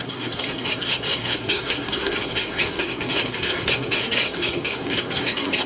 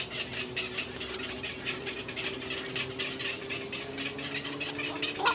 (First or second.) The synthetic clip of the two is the first